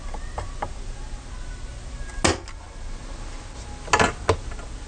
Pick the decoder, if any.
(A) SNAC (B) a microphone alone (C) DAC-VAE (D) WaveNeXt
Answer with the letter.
B